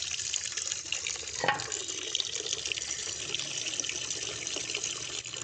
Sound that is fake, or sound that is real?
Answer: real